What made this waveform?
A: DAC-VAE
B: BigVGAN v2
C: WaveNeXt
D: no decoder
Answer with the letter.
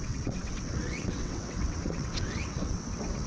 C